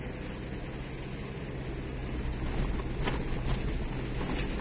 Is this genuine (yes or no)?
yes